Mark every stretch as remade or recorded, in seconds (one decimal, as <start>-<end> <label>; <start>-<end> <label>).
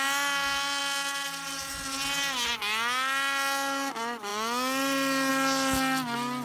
0.0-6.4 recorded